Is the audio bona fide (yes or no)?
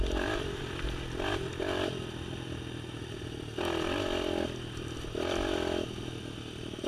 yes